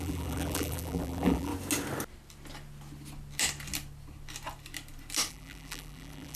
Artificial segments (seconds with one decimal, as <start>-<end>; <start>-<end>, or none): 0.0-1.5; 5.3-6.4